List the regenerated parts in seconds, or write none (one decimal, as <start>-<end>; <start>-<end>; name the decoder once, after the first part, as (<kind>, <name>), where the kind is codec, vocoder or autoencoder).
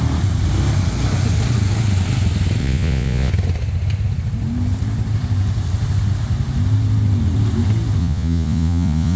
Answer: 2.6-3.3 (vocoder, Vocos); 8.0-9.2